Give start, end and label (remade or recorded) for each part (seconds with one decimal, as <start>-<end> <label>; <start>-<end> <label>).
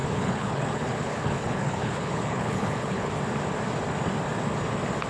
0.0-3.1 remade; 3.1-5.1 recorded